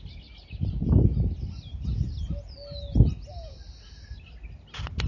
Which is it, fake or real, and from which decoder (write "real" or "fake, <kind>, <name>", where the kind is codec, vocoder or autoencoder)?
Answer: real